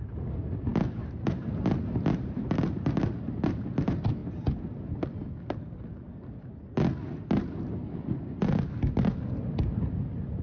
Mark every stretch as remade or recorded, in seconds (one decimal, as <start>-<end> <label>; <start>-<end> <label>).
0.0-10.4 recorded